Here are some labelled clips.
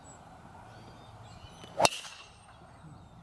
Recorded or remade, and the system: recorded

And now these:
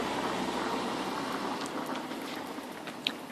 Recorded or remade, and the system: recorded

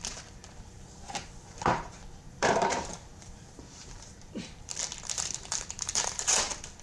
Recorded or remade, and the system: remade, vocoder, BigVGAN v2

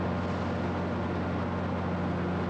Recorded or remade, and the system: recorded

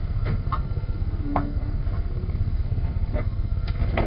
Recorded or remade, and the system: remade, codec, SNAC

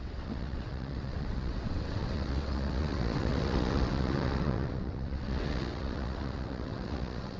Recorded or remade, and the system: remade, vocoder, WaveNeXt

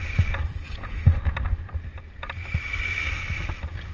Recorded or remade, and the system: recorded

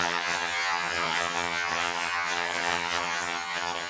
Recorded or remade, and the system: remade, vocoder, HiFi-GAN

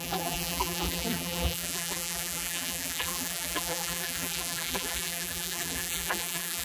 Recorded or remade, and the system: remade, vocoder, BigVGAN v2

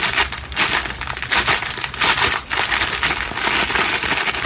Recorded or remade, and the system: recorded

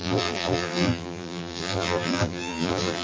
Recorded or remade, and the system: remade, vocoder, BigVGAN v2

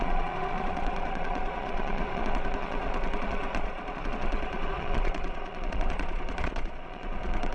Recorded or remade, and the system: remade, vocoder, Vocos